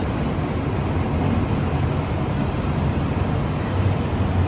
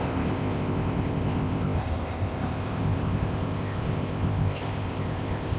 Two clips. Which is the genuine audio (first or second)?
first